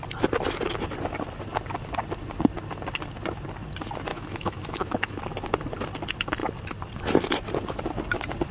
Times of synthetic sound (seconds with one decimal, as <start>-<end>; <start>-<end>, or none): 4.1-5.2

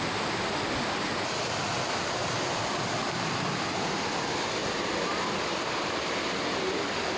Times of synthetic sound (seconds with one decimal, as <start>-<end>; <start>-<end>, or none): none